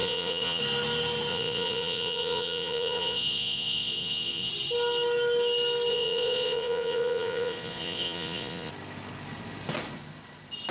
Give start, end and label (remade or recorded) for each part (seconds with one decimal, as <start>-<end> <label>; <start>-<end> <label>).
0.0-0.6 remade; 0.6-1.3 recorded; 1.3-4.5 remade; 4.5-5.9 recorded; 5.9-8.7 remade; 8.7-10.7 recorded